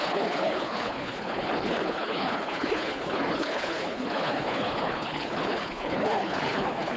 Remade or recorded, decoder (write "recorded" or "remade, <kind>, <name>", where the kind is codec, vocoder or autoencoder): remade, codec, HILCodec